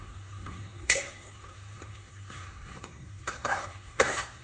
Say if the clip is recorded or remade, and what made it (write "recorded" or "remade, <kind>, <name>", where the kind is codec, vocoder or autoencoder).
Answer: remade, codec, SNAC